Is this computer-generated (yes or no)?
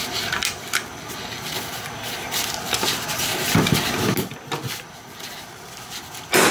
no